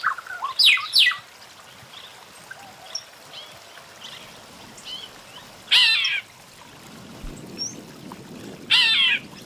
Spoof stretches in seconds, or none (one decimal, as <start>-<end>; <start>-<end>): none